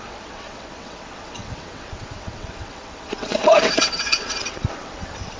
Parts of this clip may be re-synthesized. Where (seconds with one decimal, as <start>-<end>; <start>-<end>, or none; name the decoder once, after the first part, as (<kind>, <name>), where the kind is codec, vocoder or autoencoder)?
0.0-5.4 (vocoder, WaveNeXt)